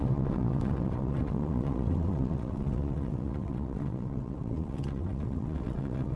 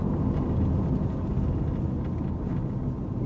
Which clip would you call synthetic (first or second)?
first